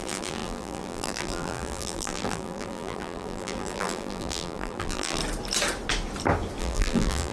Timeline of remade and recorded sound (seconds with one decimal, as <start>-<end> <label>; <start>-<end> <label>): 0.0-5.2 remade; 5.2-6.6 recorded; 6.6-7.3 remade